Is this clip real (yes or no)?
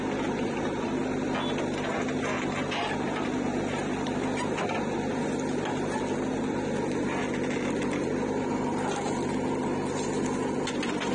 yes